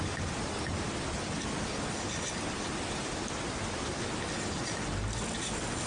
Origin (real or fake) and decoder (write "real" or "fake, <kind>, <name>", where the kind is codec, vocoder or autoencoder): real